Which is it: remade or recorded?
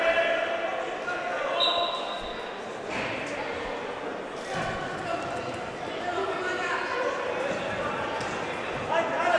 recorded